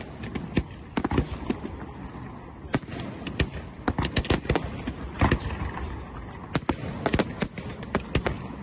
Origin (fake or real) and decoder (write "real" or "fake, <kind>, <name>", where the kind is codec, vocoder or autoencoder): real